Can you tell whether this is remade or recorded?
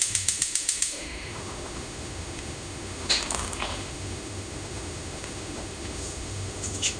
remade